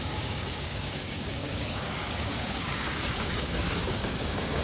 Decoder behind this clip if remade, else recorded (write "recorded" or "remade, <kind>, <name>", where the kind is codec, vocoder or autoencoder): remade, codec, DAC